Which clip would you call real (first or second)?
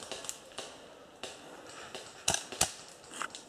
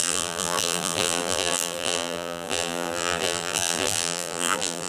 first